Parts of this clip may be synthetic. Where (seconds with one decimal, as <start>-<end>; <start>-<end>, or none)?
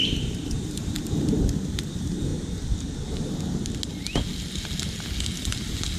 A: 0.0-2.3